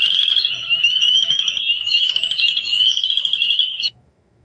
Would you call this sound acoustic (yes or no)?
no